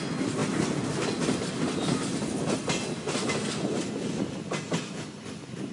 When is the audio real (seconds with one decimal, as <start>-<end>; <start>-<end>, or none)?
0.0-5.7